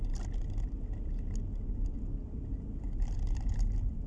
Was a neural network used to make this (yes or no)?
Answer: no